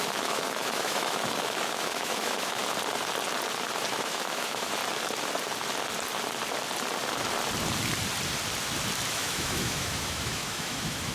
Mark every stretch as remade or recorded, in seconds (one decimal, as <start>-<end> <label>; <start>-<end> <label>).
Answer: 0.0-2.6 remade; 2.6-3.9 recorded; 3.9-4.8 remade; 4.8-9.1 recorded; 9.1-11.1 remade